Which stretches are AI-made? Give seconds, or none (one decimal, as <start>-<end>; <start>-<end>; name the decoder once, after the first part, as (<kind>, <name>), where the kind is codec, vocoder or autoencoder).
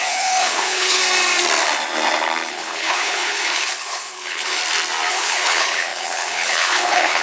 0.0-1.0 (codec, HILCodec); 2.5-4.6; 5.1-7.2